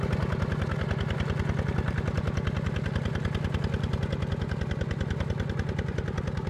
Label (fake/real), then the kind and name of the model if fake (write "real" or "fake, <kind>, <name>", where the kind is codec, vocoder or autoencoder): real